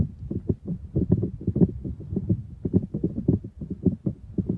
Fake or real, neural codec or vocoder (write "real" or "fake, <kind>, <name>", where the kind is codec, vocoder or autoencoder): real